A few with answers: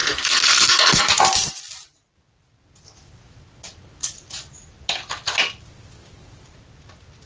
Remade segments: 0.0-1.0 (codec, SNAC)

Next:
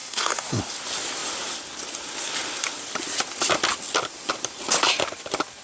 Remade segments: 0.0-0.6 (codec, SNAC)

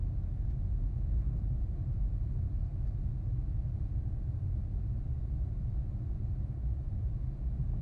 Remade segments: none

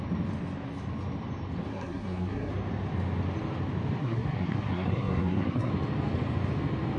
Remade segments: 1.7-2.5 (codec, SNAC); 4.0-5.7

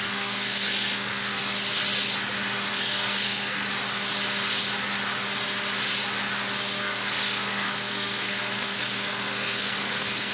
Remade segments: 0.0-1.4 (codec, SNAC); 2.7-3.6; 6.8-10.3

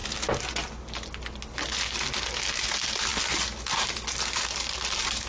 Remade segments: none

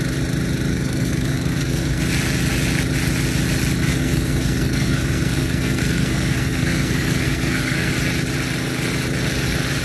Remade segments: 0.7-2.0 (codec, SNAC); 3.9-7.9

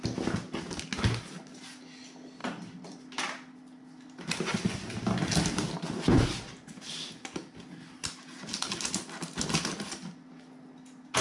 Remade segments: none